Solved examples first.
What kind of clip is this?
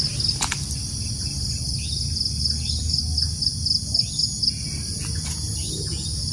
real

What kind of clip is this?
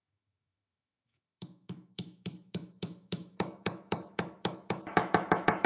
fake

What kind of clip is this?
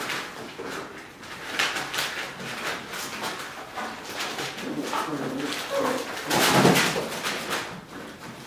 real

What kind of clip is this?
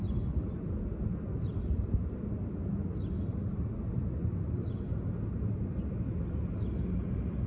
real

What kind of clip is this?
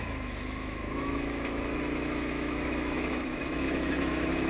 fake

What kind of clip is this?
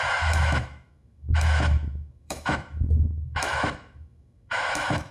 fake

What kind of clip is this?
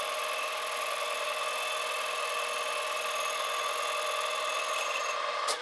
real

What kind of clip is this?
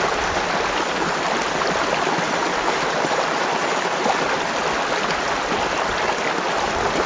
real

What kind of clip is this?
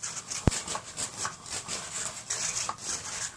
real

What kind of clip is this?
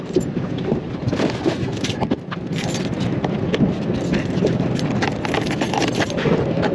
real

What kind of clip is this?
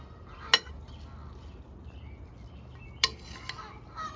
real